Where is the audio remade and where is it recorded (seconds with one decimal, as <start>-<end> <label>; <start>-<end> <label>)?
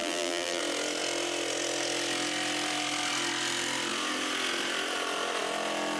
0.0-0.6 remade; 0.6-6.0 recorded